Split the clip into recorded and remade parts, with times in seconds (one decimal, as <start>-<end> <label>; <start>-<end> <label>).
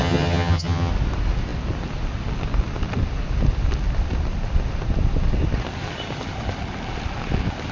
0.0-0.9 remade; 0.9-7.7 recorded